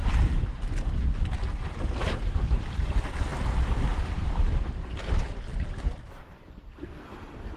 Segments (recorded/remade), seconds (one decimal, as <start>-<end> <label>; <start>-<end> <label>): 0.0-6.2 recorded; 6.2-7.6 remade